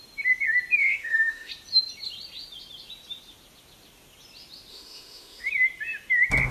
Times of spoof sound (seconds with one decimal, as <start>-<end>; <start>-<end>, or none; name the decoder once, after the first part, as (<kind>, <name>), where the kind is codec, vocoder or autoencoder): 0.8-1.5 (autoencoder, DAC-VAE); 4.7-5.5